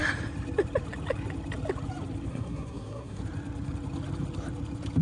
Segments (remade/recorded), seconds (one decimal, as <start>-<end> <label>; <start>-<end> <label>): 0.0-2.3 recorded; 2.3-3.2 remade; 3.2-5.0 recorded